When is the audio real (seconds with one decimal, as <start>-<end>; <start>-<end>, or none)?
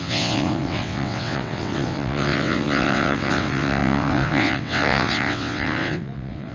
none